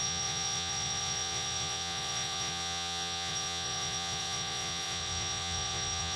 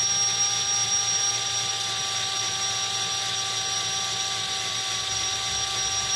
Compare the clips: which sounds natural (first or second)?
second